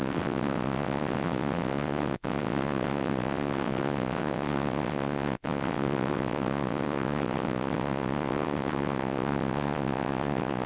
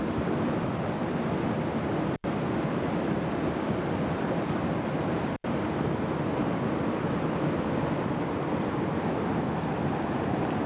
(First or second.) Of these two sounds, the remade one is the first